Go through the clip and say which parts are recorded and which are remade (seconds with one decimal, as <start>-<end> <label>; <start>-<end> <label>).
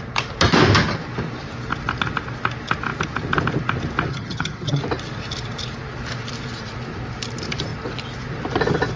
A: 0.0-4.1 recorded; 4.1-4.8 remade; 4.8-9.0 recorded